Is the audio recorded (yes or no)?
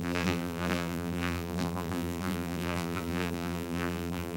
no